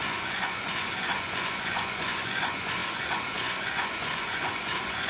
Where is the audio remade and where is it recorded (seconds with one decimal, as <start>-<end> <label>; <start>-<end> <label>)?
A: 0.0-5.1 remade